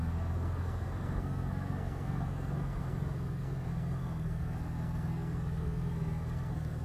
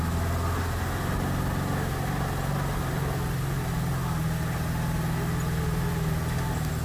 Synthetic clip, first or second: first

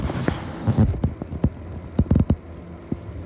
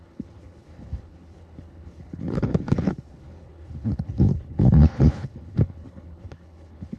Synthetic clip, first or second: second